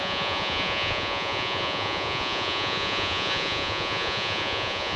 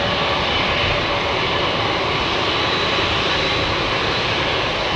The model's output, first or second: first